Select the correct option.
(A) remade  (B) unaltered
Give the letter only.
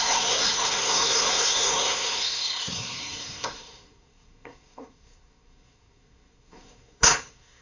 A